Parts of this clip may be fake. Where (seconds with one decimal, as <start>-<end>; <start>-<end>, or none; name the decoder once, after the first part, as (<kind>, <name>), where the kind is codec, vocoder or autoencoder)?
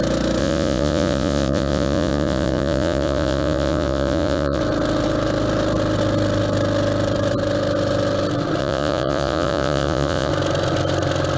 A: 0.4-4.6 (vocoder, Vocos); 8.6-10.3